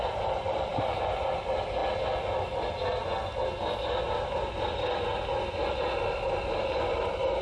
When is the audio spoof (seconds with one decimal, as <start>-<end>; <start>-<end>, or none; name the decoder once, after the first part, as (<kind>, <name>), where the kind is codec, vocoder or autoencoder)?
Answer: none